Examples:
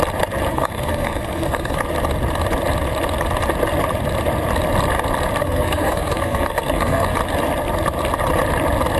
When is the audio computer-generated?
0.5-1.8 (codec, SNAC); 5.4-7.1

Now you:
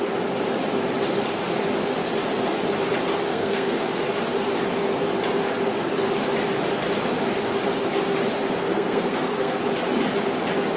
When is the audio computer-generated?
3.3-4.0 (codec, SNAC); 8.6-9.6

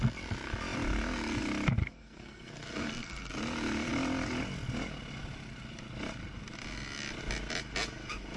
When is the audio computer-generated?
1.8-3.3 (codec, SNAC)

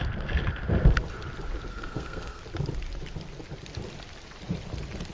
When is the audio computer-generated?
1.7-2.4 (codec, SNAC)

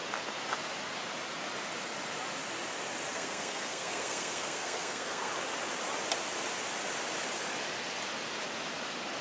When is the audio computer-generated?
3.1-5.3 (codec, SNAC)

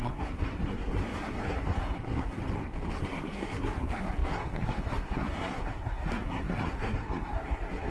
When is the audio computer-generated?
0.0-2.4 (codec, SNAC); 3.0-7.9

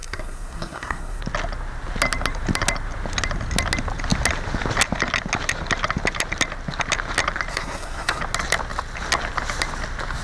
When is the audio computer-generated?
0.0-1.2 (codec, SNAC); 7.5-8.2

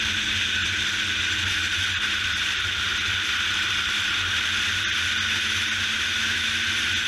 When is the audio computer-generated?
none